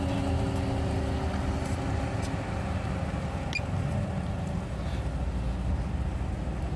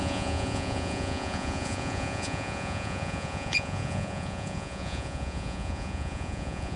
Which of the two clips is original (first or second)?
first